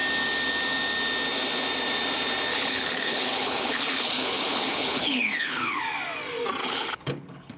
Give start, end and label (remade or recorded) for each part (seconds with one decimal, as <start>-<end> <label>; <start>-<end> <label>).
0.0-2.5 recorded; 2.5-5.8 remade; 5.8-6.6 recorded; 6.6-7.6 remade